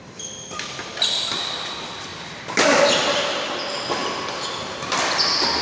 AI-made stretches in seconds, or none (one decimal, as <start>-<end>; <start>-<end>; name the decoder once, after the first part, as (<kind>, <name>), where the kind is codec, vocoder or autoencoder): 2.1-3.0 (vocoder, BigVGAN v2); 4.0-4.6